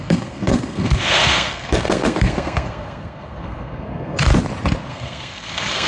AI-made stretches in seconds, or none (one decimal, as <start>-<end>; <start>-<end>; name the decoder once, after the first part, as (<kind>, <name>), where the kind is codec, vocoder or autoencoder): 0.0-4.3 (codec, SNAC); 4.9-5.9